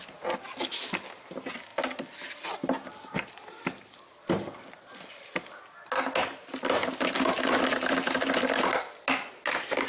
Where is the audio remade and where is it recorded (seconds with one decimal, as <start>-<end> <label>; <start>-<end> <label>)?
0.0-9.9 recorded